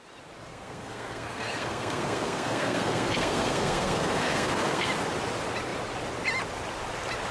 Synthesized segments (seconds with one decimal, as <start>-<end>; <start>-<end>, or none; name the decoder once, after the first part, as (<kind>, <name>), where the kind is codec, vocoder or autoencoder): 0.5-4.9 (codec, SNAC)